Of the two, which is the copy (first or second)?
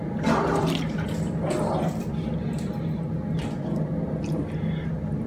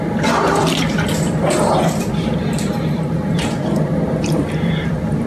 second